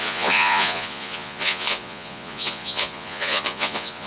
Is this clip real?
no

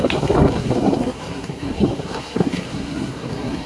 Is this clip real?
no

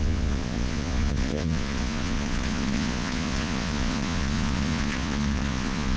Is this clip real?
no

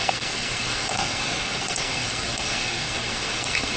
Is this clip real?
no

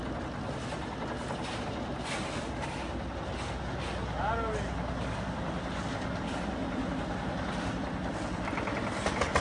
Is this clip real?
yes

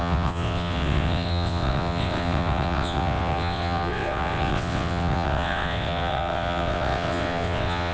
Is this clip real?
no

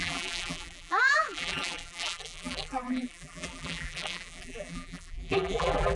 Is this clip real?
no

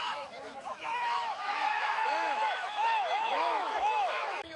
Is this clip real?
no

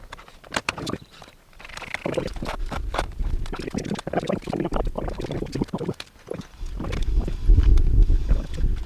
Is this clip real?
no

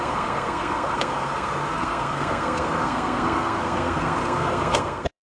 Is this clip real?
no